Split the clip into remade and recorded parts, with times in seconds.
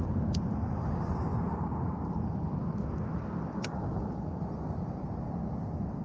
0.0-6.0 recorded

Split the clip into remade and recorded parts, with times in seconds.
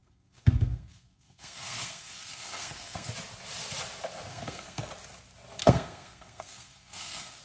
0.0-3.1 remade; 3.1-4.3 recorded; 4.3-4.9 remade; 4.9-5.6 recorded; 5.6-7.4 remade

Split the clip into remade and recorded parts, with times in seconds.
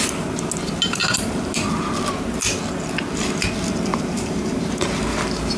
0.0-3.9 recorded; 3.9-5.0 remade; 5.0-5.6 recorded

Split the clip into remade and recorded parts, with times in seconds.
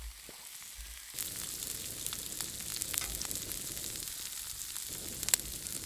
0.0-5.9 recorded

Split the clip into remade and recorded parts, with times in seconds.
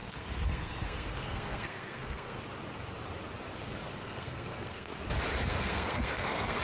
0.0-2.4 remade; 2.4-3.5 recorded; 3.5-4.9 remade; 4.9-5.5 recorded; 5.5-6.6 remade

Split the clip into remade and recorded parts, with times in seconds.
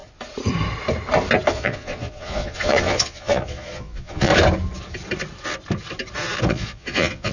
0.0-1.5 recorded; 1.5-4.3 remade; 4.3-6.5 recorded; 6.5-7.3 remade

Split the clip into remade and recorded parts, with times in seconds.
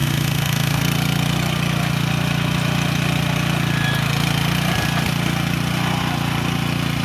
0.0-0.8 remade; 0.8-7.0 recorded